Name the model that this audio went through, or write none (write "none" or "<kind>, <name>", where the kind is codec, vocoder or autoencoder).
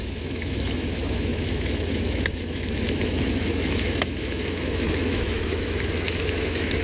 autoencoder, DAC-VAE